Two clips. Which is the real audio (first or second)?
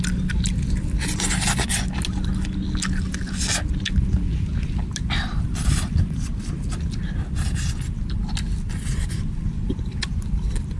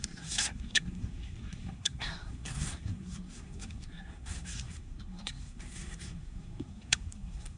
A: first